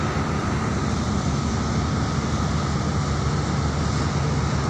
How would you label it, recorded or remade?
recorded